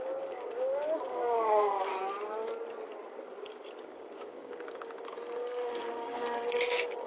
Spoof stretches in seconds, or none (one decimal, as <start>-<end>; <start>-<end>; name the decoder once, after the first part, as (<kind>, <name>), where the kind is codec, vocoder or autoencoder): 0.0-1.9 (codec, DAC); 3.8-7.1